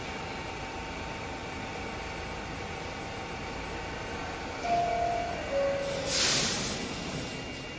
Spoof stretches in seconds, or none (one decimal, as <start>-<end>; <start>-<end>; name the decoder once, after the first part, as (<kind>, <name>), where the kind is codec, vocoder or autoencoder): none